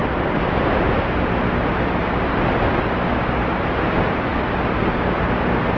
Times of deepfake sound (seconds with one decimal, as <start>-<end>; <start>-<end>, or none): none